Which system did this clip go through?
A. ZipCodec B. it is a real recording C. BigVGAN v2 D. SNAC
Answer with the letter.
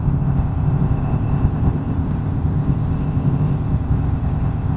A